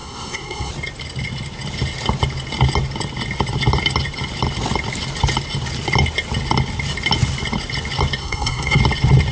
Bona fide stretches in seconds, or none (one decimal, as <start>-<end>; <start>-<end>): 0.7-8.2; 8.8-9.3